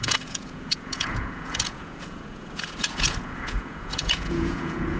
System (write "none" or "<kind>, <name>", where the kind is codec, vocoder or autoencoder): vocoder, Vocos